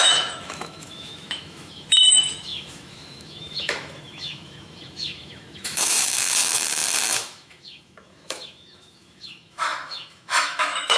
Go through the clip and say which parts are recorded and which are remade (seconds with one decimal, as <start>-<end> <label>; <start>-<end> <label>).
0.0-11.0 remade